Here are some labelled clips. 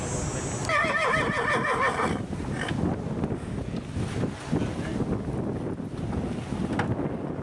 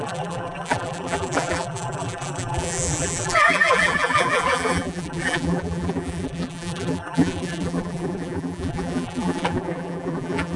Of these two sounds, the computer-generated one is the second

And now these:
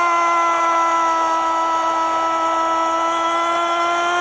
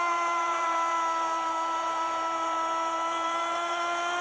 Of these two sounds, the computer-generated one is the second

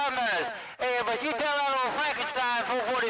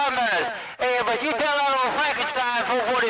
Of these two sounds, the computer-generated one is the second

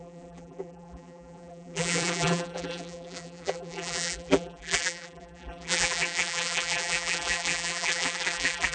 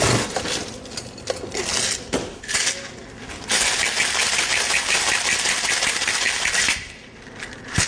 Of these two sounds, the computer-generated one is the first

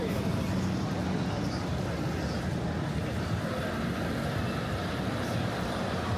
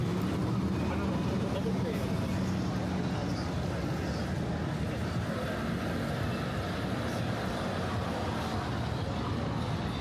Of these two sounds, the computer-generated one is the first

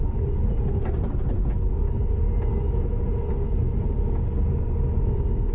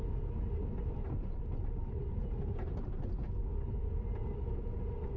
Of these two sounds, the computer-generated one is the second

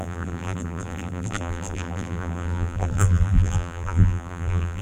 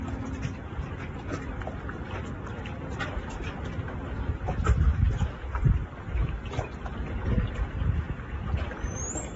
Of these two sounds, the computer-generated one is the first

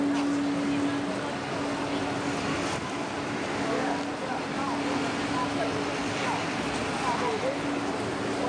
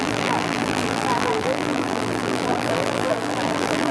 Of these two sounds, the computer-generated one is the second